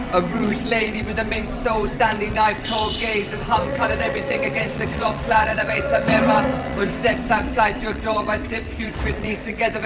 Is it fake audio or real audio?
fake